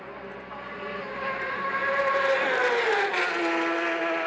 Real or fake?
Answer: real